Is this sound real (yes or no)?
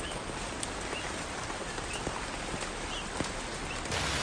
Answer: yes